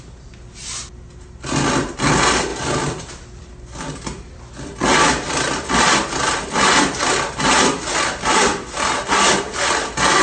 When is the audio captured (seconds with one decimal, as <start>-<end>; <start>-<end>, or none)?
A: 0.0-10.2